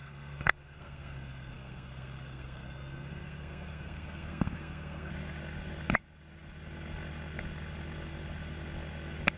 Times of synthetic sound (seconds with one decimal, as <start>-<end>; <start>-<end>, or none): 0.0-5.1